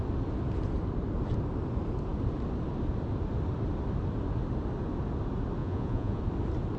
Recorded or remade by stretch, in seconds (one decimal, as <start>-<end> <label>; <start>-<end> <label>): 0.0-5.6 recorded; 5.6-6.2 remade; 6.2-6.8 recorded